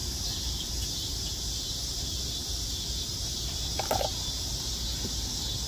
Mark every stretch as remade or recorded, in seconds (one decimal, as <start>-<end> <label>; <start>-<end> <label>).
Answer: 0.0-5.7 remade